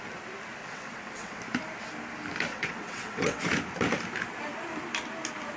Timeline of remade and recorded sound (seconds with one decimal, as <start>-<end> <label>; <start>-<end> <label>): 0.0-0.6 recorded; 0.6-1.4 remade; 1.4-2.5 recorded; 2.5-3.4 remade; 3.4-5.6 recorded